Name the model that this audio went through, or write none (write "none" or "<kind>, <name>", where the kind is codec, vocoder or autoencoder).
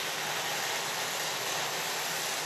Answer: none